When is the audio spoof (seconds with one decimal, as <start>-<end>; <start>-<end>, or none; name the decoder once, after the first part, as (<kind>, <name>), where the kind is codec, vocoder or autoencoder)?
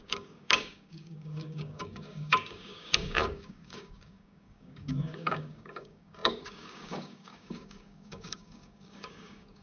0.0-9.6 (codec, DAC)